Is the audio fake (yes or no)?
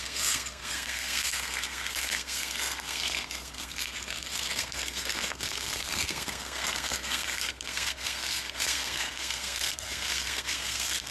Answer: yes